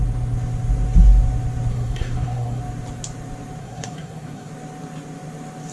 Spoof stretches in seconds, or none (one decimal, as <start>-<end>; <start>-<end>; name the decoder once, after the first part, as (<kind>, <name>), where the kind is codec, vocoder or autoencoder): 1.7-2.6 (codec, SNAC); 3.6-4.5